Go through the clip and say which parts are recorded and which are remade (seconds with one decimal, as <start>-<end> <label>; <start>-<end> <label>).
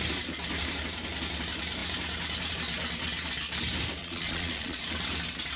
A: 0.0-4.0 recorded; 4.0-4.8 remade; 4.8-5.6 recorded